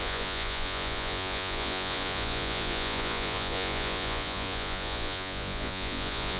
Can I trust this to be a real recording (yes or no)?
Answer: no